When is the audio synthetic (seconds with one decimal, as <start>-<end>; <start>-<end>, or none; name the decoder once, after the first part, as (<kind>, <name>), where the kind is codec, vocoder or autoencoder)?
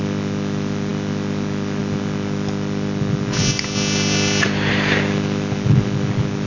none